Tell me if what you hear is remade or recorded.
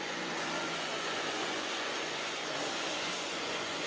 remade